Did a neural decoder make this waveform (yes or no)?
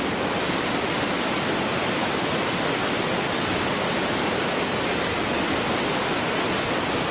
no